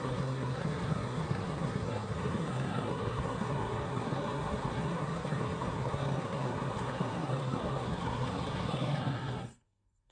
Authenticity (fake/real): fake